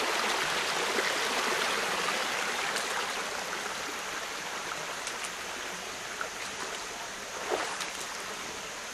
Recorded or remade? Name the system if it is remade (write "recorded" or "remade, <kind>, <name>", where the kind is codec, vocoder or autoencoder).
recorded